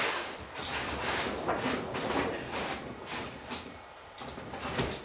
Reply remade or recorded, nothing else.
recorded